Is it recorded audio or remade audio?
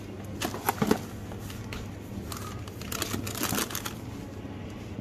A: recorded